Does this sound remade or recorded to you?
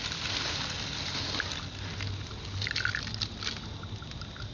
recorded